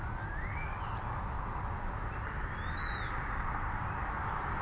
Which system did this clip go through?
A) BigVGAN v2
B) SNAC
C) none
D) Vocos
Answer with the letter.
C